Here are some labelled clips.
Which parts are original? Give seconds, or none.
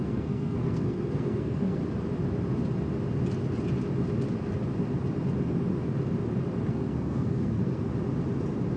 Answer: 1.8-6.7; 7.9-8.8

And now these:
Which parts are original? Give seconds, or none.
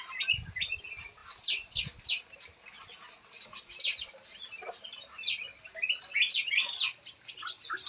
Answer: 0.0-7.9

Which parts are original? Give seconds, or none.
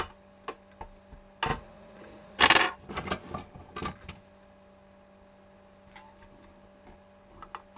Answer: 0.0-1.5; 2.4-7.8